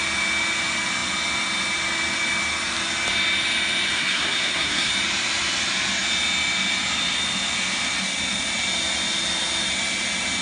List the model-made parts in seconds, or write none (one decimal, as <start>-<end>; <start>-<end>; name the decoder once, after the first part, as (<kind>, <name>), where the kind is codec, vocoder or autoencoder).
3.9-4.9 (codec, SNAC)